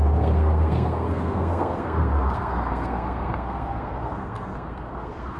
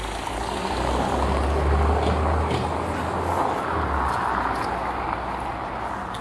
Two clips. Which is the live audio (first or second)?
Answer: second